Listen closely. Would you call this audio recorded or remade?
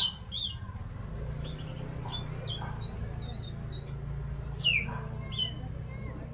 recorded